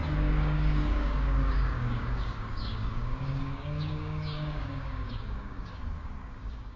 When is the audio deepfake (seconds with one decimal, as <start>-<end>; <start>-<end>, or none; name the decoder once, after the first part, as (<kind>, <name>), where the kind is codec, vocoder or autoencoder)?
0.0-6.8 (codec, DAC)